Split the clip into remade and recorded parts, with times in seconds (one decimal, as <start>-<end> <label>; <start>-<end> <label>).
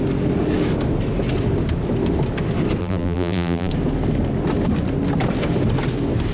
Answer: 0.0-2.8 recorded; 2.8-3.7 remade; 3.7-6.3 recorded